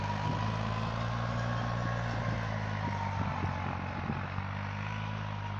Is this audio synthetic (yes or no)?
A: no